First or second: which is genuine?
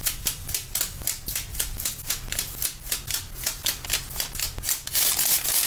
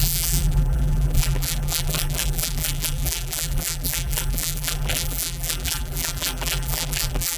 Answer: first